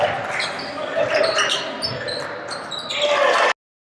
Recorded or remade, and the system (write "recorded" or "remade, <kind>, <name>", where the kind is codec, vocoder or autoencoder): recorded